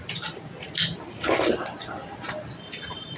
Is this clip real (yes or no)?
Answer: yes